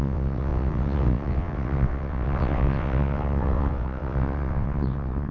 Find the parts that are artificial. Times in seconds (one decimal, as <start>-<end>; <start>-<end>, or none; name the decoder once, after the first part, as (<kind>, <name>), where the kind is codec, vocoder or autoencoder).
0.0-5.3 (vocoder, WaveNeXt)

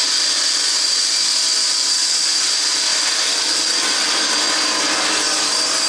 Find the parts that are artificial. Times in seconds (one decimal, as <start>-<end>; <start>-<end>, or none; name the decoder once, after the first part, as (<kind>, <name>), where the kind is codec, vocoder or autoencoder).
none

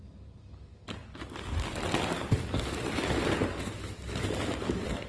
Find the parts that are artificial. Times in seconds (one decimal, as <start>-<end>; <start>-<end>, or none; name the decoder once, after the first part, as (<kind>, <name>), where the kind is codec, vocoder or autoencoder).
none

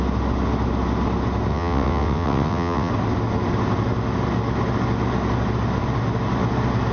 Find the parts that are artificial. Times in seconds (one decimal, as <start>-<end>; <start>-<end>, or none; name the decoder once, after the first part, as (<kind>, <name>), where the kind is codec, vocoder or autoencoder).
1.5-2.9 (vocoder, WaveNeXt)

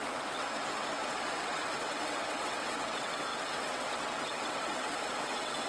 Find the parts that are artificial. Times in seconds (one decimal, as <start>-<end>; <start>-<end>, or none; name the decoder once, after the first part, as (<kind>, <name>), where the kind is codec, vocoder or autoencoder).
0.0-5.7 (vocoder, WaveNeXt)

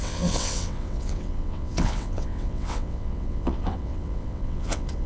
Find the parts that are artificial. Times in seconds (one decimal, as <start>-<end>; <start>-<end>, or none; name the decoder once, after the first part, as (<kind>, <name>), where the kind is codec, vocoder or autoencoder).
0.0-5.1 (vocoder, WaveNeXt)

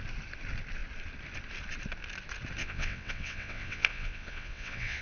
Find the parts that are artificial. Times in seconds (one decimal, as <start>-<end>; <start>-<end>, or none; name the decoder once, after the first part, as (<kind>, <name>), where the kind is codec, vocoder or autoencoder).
2.6-5.0 (vocoder, WaveNeXt)

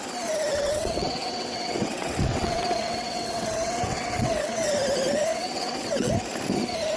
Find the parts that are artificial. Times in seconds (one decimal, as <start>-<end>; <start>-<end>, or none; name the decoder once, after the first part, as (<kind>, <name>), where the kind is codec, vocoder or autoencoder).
0.5-4.7 (vocoder, WaveNeXt); 5.3-6.1